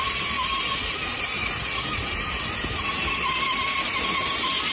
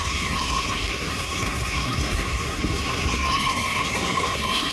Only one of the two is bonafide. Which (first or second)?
first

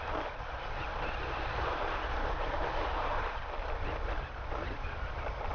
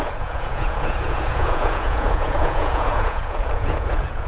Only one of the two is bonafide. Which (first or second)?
first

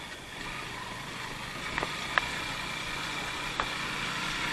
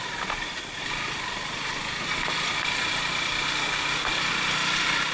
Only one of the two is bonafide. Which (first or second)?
second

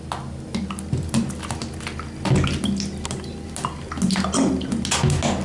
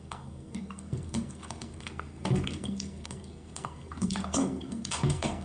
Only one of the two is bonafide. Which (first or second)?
first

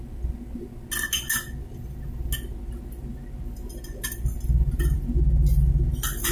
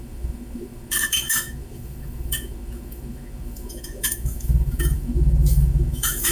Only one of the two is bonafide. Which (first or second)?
first